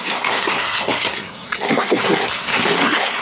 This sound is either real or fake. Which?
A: fake